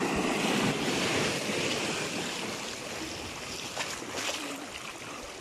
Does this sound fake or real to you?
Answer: real